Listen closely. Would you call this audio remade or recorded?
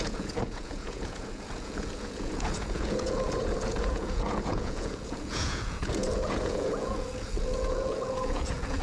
remade